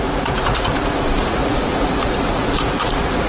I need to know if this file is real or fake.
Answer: fake